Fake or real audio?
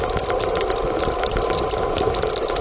real